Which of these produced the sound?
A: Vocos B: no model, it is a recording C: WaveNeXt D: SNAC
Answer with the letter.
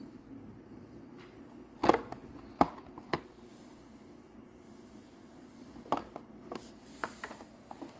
B